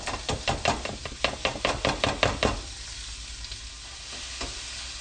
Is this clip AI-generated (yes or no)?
no